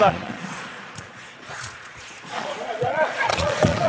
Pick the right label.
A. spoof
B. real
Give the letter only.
A